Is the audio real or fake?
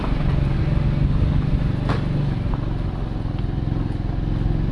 real